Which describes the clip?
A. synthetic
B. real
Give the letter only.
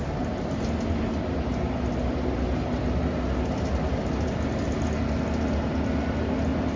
B